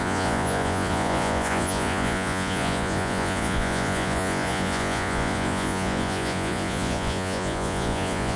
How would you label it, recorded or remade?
remade